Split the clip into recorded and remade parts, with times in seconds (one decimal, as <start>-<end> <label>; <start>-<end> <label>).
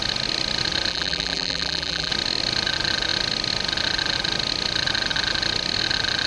0.0-0.9 recorded; 0.9-2.1 remade; 2.1-6.3 recorded